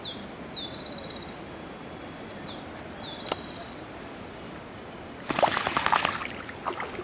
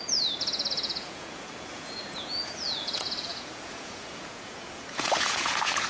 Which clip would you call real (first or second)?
first